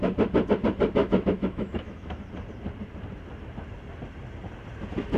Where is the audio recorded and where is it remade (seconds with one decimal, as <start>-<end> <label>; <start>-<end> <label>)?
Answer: 0.0-1.0 recorded; 1.0-2.2 remade; 2.2-5.2 recorded